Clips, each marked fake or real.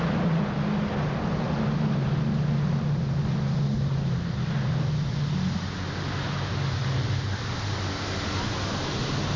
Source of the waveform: real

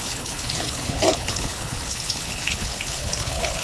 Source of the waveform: fake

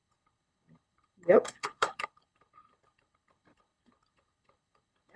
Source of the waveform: fake